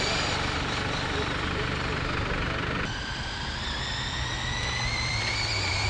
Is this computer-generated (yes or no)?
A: no